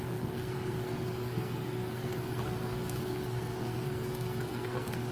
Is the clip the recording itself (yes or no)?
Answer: no